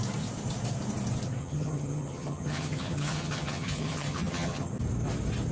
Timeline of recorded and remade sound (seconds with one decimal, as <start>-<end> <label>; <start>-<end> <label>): 0.0-1.4 recorded; 1.4-4.7 remade; 4.7-5.5 recorded